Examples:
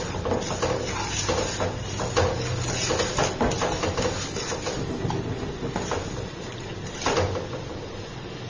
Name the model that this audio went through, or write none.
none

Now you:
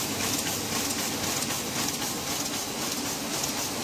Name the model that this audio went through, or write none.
none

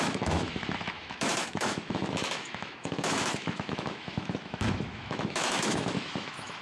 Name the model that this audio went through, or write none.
autoencoder, DAC-VAE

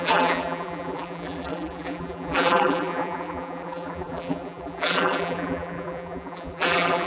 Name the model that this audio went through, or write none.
vocoder, BigVGAN v2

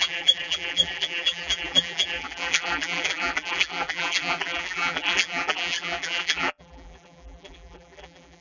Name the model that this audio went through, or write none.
vocoder, BigVGAN v2